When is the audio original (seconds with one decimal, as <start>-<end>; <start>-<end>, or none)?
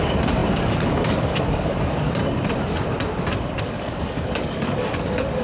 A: 2.2-3.6